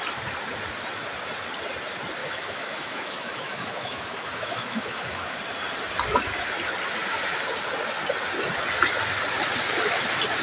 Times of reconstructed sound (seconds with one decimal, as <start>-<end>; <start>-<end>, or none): 2.2-5.4